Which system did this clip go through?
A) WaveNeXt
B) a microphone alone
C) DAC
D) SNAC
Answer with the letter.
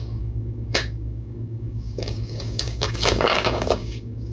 C